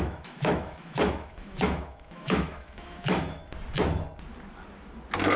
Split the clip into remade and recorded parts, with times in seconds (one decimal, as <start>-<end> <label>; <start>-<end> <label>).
0.0-3.4 remade; 3.4-5.4 recorded